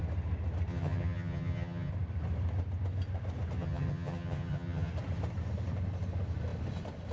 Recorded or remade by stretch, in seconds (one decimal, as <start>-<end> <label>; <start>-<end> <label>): 0.0-0.7 recorded; 0.7-1.9 remade; 1.9-3.6 recorded; 3.6-4.9 remade; 4.9-7.1 recorded